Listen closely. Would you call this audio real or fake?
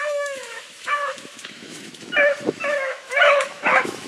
fake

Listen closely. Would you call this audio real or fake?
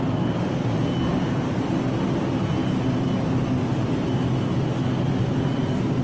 real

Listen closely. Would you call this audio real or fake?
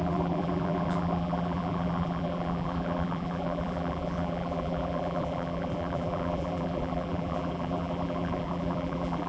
fake